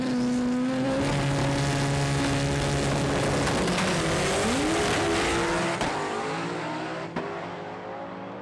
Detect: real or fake real